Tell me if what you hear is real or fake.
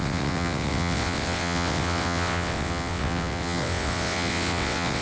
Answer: fake